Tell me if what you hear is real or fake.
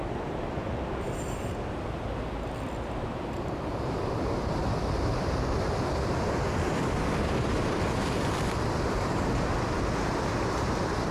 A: real